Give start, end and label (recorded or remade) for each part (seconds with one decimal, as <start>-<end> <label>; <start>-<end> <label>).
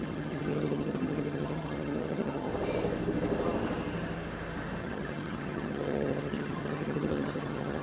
0.0-2.5 remade; 2.5-4.8 recorded; 4.8-7.8 remade